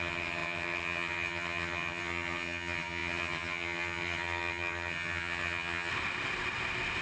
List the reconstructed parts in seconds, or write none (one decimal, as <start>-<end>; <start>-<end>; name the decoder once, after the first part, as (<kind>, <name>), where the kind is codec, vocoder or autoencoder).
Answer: 0.0-5.9 (vocoder, HiFi-GAN)